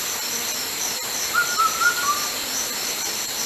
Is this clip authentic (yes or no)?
yes